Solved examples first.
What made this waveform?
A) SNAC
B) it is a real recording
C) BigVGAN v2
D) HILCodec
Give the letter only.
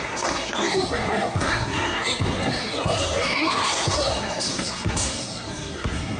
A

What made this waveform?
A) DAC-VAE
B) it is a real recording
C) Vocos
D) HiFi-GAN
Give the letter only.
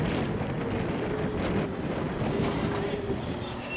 B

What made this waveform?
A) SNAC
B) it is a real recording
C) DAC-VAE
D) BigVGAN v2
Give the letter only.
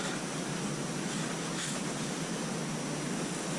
B